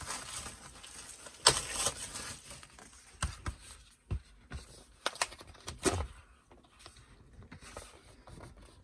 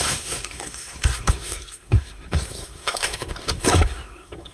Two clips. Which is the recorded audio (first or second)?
first